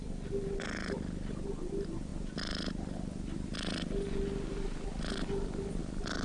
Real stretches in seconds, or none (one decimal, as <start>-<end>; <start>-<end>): 0.0-6.2